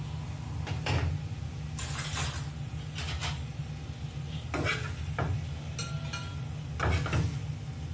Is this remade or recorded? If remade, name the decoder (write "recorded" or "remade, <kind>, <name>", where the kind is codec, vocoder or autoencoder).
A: recorded